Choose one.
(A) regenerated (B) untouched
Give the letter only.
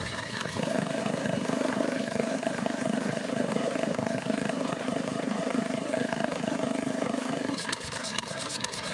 A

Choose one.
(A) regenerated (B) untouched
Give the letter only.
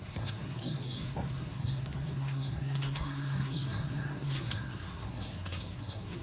A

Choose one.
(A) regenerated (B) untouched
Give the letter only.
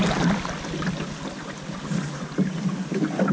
B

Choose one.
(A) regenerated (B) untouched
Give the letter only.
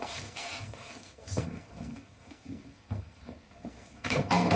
A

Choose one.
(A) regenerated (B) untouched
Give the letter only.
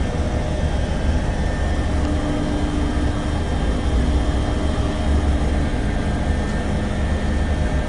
B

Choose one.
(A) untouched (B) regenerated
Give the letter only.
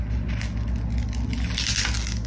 A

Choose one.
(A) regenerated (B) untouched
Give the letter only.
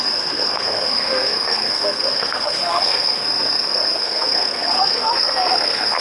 A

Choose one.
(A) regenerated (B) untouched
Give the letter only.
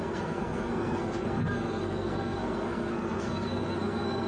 A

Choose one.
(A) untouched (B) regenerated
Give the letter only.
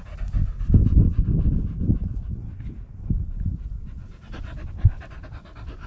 A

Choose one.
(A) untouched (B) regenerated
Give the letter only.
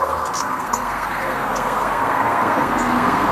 B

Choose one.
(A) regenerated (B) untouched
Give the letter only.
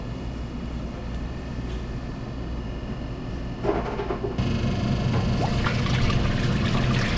B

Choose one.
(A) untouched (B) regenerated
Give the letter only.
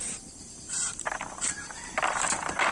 A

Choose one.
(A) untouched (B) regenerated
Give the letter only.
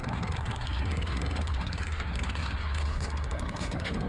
B